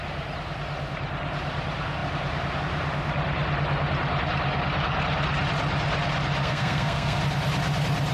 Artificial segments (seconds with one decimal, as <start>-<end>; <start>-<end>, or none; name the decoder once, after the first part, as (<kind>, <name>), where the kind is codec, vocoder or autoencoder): 6.4-7.2 (codec, SNAC)